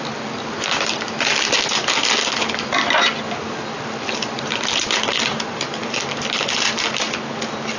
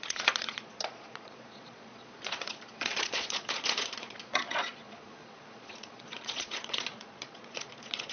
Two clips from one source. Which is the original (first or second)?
first